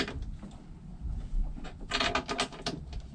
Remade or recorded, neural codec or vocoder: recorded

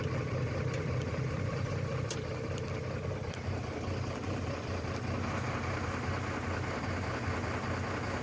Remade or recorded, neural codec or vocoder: remade, vocoder, BigVGAN v2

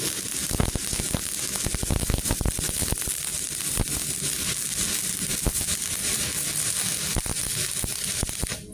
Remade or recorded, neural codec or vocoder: recorded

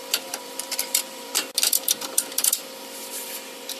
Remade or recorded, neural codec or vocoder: remade, vocoder, BigVGAN v2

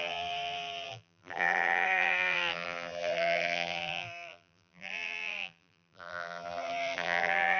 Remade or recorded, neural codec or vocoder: remade, vocoder, BigVGAN v2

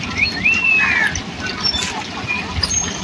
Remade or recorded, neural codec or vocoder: recorded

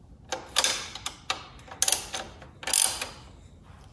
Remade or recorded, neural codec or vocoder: recorded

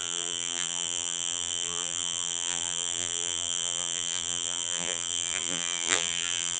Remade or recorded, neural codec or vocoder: remade, vocoder, BigVGAN v2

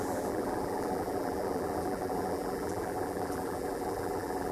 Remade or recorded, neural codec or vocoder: remade, vocoder, BigVGAN v2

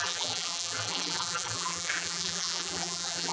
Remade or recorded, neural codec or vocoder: remade, vocoder, BigVGAN v2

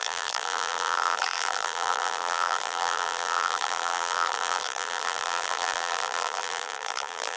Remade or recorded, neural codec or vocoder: remade, vocoder, BigVGAN v2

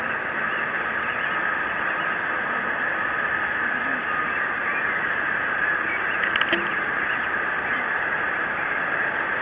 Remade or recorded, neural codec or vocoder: remade, vocoder, BigVGAN v2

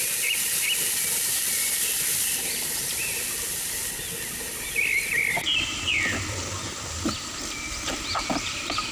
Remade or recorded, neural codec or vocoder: remade, vocoder, BigVGAN v2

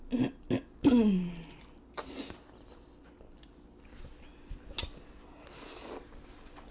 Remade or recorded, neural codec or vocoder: recorded